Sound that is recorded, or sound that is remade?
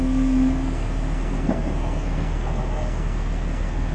remade